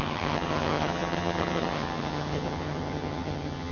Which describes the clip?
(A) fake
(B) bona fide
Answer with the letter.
A